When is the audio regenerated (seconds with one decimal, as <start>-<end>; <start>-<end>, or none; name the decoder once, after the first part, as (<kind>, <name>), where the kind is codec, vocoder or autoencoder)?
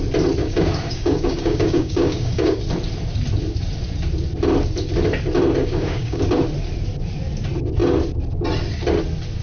0.4-2.6 (codec, DAC); 5.6-6.2